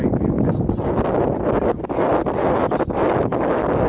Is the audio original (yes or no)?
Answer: yes